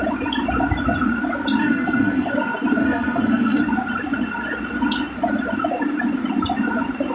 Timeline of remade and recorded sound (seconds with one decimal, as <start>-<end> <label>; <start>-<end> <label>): 0.0-1.6 recorded; 1.6-2.3 remade; 2.3-2.8 recorded; 2.8-3.6 remade; 3.6-7.1 recorded

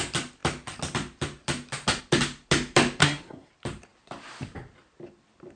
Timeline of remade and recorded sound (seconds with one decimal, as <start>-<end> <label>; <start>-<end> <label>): 0.0-3.0 recorded; 3.0-3.5 remade; 3.5-5.6 recorded